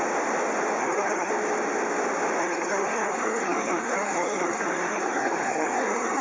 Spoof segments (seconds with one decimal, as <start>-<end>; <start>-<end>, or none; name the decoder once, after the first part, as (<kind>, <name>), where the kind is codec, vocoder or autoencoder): 0.8-1.3 (codec, SNAC); 2.4-6.2